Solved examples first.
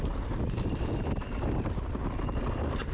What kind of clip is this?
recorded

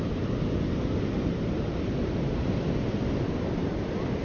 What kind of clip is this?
recorded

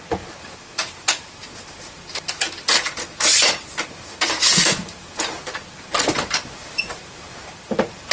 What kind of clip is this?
recorded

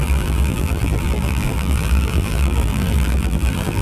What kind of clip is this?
remade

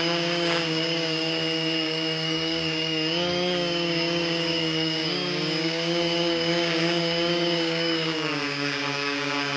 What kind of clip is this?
remade